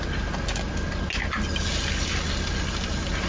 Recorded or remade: recorded